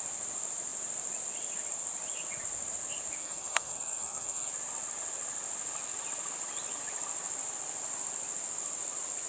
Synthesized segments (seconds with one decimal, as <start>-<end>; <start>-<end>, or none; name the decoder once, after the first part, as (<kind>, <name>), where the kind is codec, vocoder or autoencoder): 3.2-4.5 (codec, SNAC)